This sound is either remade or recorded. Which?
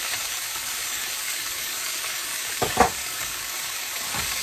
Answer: remade